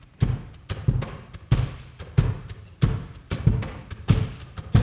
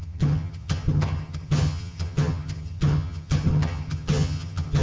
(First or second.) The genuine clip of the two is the first